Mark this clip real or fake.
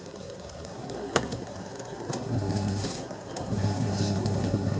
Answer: fake